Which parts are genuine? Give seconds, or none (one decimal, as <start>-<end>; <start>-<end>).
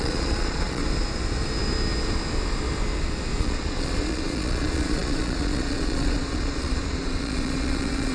0.8-3.4